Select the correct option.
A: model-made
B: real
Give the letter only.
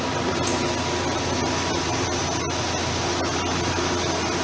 B